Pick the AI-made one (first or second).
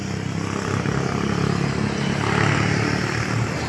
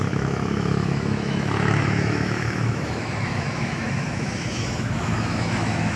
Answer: second